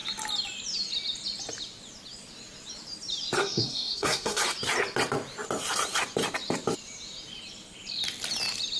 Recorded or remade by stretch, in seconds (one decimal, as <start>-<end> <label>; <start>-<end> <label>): 0.0-3.4 recorded; 3.4-4.4 remade; 4.4-8.8 recorded